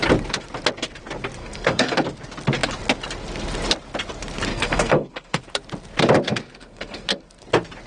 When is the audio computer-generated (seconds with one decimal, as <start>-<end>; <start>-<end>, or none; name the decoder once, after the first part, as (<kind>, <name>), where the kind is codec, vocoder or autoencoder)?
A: 1.4-2.0 (codec, SNAC); 4.5-5.4; 6.3-7.4